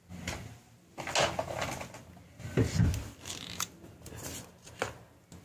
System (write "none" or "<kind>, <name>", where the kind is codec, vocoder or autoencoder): none